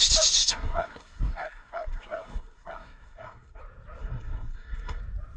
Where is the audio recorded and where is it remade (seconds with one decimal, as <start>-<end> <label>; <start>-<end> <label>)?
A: 0.0-0.4 recorded; 0.4-3.6 remade; 3.6-4.0 recorded; 4.0-5.0 remade; 5.0-5.4 recorded